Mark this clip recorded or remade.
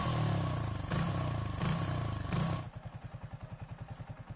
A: recorded